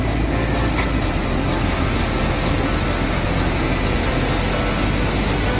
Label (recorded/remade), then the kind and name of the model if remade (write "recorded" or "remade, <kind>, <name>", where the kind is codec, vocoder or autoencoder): recorded